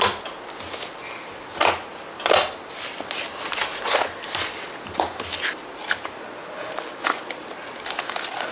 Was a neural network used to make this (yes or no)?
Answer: no